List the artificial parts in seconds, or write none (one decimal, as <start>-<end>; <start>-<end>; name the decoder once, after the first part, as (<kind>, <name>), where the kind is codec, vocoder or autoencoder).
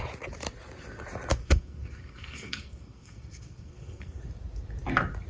1.4-4.2 (codec, SNAC)